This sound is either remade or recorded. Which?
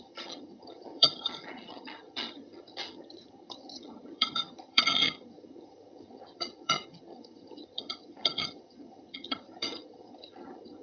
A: remade